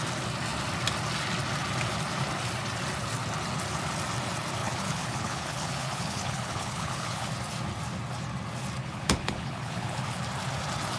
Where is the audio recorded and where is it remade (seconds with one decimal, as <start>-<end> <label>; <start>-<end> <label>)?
0.0-4.6 recorded; 4.6-7.3 remade; 7.3-8.8 recorded; 8.8-10.2 remade; 10.2-11.0 recorded